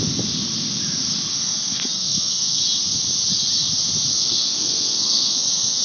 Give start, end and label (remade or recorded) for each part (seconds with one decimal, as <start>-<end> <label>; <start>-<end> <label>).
0.0-1.3 recorded; 1.3-2.6 remade; 2.6-4.1 recorded; 4.1-5.8 remade